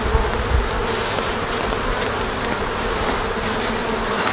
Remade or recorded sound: recorded